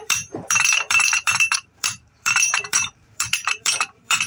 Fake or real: fake